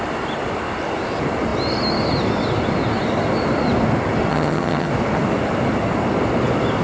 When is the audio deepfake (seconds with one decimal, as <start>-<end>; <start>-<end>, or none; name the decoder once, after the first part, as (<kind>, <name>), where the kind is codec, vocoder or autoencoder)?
4.3-4.9 (vocoder, HiFi-GAN)